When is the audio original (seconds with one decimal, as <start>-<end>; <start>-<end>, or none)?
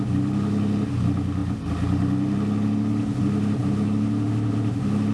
0.0-5.1